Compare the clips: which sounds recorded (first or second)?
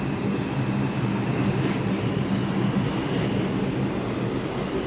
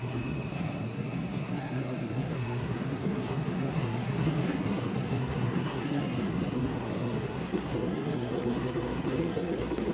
first